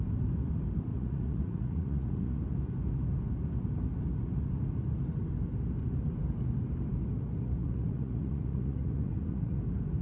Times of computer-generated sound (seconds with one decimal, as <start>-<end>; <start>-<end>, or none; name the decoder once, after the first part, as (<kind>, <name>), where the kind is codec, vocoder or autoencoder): 0.9-2.4 (vocoder, Vocos); 7.6-9.6